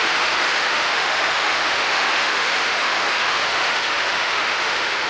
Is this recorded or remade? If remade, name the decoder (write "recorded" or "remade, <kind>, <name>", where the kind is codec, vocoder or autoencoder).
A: remade, autoencoder, DAC-VAE